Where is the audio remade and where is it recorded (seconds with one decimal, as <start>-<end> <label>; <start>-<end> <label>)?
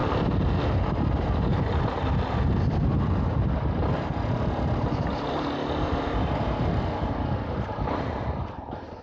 0.0-5.3 recorded; 5.3-9.0 remade